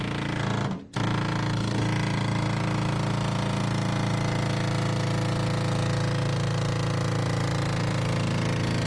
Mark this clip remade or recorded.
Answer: recorded